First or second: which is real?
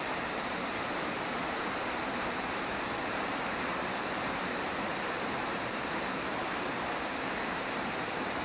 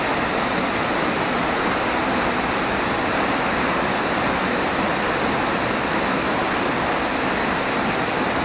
second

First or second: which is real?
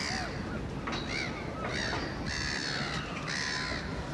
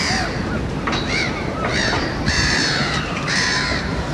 first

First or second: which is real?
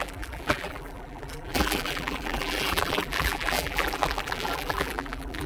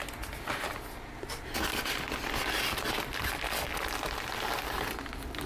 second